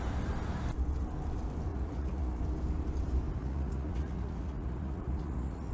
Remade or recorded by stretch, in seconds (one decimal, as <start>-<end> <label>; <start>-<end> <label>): 0.0-1.7 recorded; 1.7-2.4 remade; 2.4-3.4 recorded; 3.4-5.7 remade